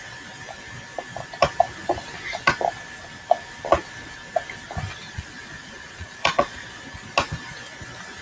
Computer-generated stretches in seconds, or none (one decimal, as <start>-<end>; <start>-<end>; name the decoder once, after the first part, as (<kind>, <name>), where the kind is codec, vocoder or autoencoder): 4.9-6.8 (vocoder, Vocos)